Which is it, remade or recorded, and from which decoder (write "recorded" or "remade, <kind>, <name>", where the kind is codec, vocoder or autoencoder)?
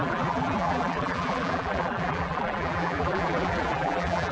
remade, vocoder, BigVGAN v2